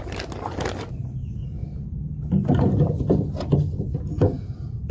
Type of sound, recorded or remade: recorded